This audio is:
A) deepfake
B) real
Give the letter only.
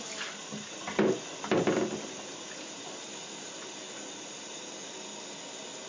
B